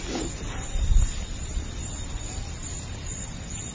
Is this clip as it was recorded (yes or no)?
yes